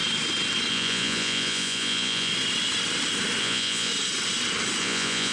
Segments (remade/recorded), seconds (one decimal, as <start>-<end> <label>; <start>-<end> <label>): 0.0-0.7 recorded; 0.7-2.3 remade; 2.3-3.4 recorded; 3.4-3.9 remade; 3.9-4.8 recorded; 4.8-5.3 remade